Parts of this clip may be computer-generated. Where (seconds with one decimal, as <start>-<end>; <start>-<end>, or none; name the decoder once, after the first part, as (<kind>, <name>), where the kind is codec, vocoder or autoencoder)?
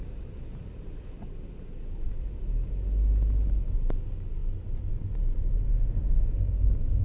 5.7-6.4 (autoencoder, DAC-VAE)